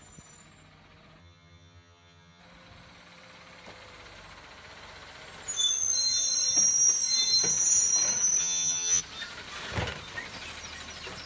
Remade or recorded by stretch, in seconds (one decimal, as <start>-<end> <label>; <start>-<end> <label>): 0.0-1.2 recorded; 1.2-2.4 remade; 2.4-8.4 recorded; 8.4-9.0 remade; 9.0-11.3 recorded